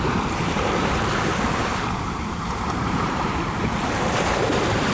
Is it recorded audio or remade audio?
remade